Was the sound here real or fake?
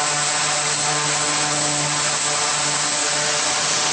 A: real